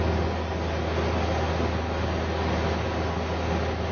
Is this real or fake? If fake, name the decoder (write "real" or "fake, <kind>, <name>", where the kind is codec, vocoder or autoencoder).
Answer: real